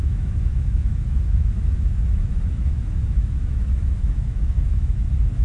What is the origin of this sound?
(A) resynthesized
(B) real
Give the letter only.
A